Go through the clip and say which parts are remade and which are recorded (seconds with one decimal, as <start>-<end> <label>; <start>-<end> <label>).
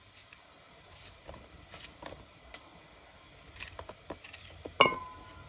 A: 0.0-5.5 recorded